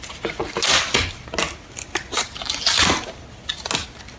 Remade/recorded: recorded